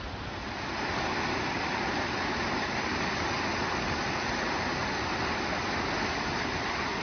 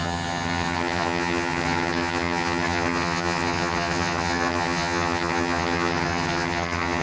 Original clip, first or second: first